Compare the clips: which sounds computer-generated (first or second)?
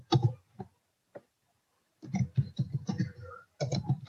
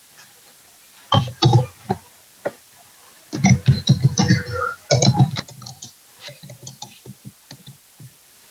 first